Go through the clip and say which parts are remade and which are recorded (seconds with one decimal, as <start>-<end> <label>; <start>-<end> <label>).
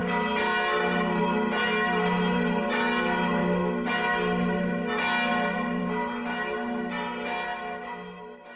0.0-8.6 recorded